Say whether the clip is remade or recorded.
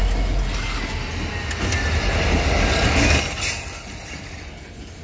recorded